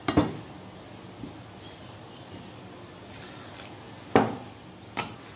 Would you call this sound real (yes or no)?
yes